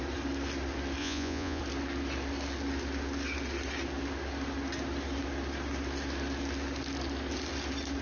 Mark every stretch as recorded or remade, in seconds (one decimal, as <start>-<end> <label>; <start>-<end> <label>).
0.0-1.0 recorded; 1.0-1.6 remade; 1.6-8.0 recorded